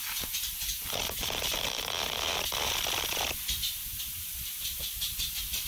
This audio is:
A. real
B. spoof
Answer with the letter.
A